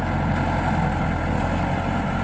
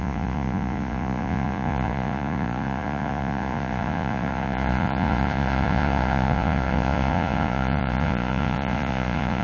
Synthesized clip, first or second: second